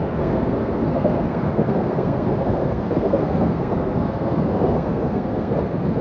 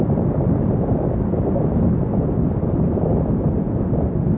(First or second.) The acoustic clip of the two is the second